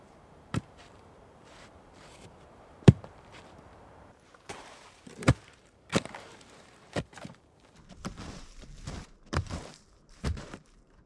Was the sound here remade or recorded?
remade